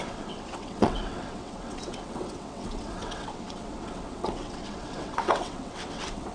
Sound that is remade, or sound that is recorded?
remade